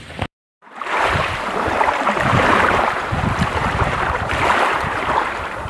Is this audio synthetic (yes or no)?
yes